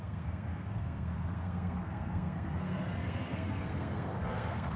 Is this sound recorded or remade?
remade